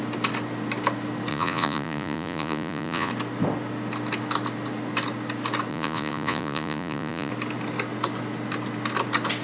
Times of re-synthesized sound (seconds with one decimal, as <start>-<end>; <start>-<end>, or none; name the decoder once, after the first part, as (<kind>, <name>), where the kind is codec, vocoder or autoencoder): 1.3-3.1 (vocoder, Vocos); 5.7-7.3

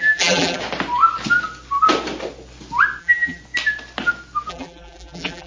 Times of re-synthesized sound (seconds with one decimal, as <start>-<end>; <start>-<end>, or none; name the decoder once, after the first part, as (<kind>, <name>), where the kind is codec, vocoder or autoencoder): 0.0-0.6 (vocoder, BigVGAN v2); 3.0-3.4; 4.5-5.5

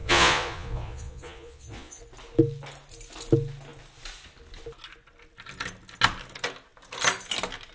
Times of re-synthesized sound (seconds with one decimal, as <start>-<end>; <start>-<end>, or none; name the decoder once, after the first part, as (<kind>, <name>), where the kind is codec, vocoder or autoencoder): 0.0-2.0 (vocoder, Vocos)